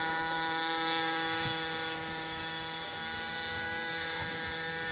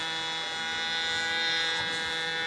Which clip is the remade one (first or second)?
first